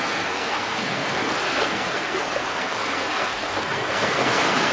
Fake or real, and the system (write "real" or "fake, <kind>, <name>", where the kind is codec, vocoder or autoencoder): fake, codec, SNAC